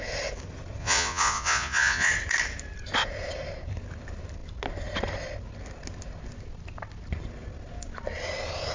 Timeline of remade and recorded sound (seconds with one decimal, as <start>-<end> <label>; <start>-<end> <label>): 0.0-0.8 recorded; 0.8-2.1 remade; 2.1-8.7 recorded